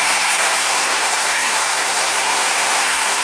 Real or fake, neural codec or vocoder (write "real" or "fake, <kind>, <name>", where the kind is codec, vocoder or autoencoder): fake, codec, SNAC